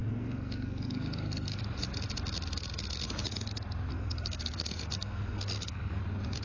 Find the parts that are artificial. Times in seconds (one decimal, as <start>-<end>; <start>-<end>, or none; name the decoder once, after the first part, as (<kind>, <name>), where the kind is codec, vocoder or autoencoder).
0.0-1.6 (codec, SNAC); 3.9-6.0